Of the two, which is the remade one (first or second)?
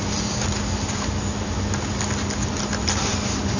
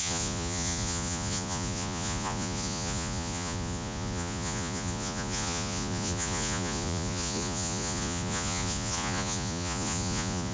second